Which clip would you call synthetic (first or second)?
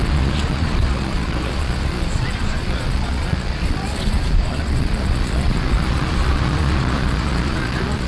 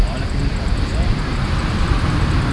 first